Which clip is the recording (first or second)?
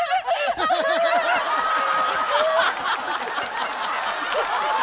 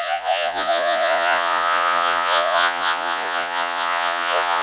first